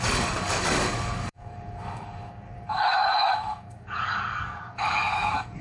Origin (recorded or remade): remade